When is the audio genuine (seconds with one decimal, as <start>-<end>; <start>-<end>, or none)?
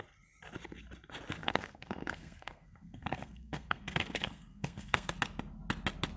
0.0-1.4; 5.1-6.2